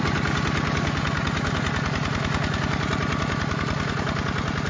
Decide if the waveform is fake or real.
real